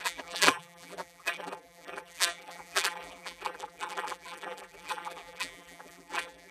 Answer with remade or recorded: remade